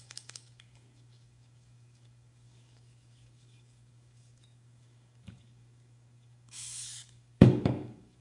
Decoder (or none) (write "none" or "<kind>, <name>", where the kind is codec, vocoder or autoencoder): codec, DAC